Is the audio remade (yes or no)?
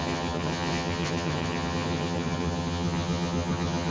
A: yes